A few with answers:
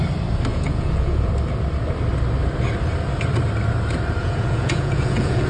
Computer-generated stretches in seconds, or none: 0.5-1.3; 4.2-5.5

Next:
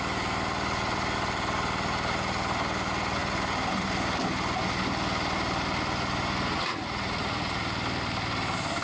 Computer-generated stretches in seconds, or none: 6.5-7.6

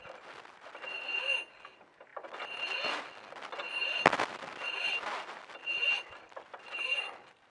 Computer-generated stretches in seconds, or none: none

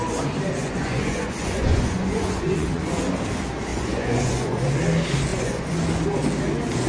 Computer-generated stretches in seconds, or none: 0.6-3.0; 3.7-4.8; 5.3-5.8

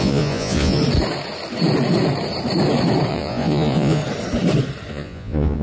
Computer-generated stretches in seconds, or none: 0.0-0.8; 3.1-4.0; 4.9-5.6

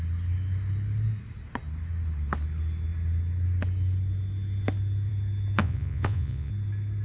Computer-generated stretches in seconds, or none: 5.6-6.5

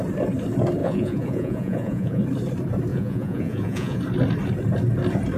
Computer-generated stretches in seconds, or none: 0.8-2.2; 2.9-4.0